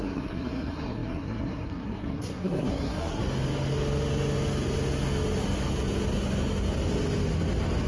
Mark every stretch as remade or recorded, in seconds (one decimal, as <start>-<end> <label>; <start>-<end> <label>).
0.0-3.2 remade; 3.2-7.9 recorded